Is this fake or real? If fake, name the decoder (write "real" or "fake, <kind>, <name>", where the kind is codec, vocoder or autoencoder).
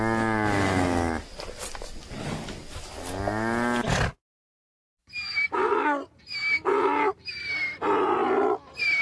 real